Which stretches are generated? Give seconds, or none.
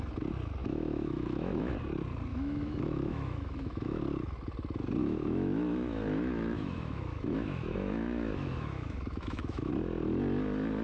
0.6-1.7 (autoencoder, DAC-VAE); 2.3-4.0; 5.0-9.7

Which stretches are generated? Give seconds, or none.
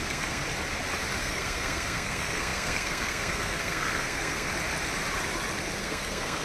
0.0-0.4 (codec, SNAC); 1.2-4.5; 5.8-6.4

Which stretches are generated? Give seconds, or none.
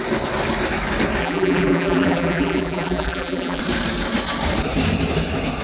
1.2-3.6 (vocoder, BigVGAN v2)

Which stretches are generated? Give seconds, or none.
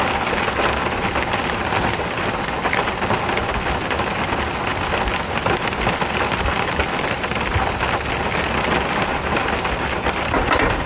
none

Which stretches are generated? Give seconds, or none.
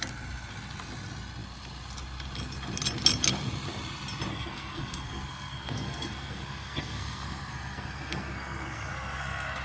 4.3-9.6 (codec, SNAC)